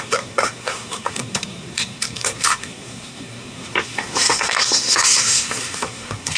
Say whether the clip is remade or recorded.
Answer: remade